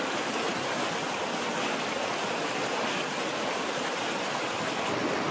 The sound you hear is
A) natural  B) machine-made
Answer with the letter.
A